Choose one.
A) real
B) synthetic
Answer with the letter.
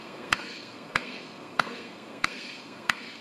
B